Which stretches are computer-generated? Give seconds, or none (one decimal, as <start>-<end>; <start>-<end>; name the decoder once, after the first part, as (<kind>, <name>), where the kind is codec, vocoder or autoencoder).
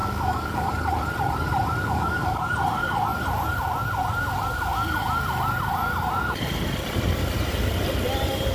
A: 0.0-0.7 (codec, DAC); 1.8-2.4